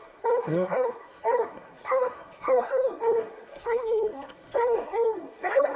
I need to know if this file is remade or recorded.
remade